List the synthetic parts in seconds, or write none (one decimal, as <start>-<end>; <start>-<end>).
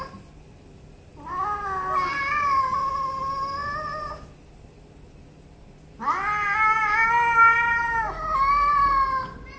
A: none